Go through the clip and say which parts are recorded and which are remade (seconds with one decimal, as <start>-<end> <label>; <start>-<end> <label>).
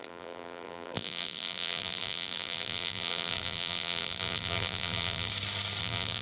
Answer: 0.0-5.3 remade; 5.3-5.8 recorded; 5.8-6.2 remade